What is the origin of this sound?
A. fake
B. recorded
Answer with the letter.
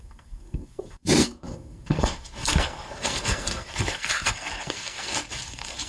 A